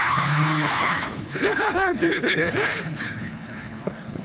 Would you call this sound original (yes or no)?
no